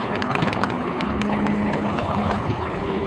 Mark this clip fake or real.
fake